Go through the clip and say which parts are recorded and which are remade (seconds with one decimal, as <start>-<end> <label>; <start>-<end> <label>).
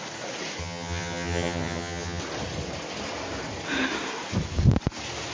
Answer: 0.0-0.6 recorded; 0.6-2.2 remade; 2.2-5.3 recorded